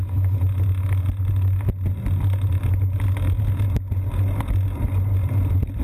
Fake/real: real